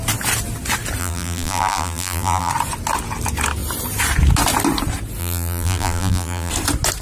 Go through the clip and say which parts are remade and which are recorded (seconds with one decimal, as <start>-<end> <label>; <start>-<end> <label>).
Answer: 0.0-1.0 recorded; 1.0-2.5 remade; 2.5-5.2 recorded; 5.2-6.5 remade; 6.5-7.0 recorded